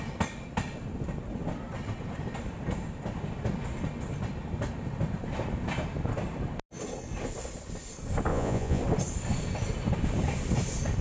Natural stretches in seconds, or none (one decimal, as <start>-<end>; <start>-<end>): 0.0-8.3; 8.8-11.0